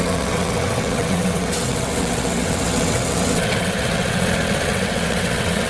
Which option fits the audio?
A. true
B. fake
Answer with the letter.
B